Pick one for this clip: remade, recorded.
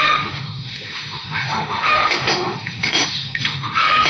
remade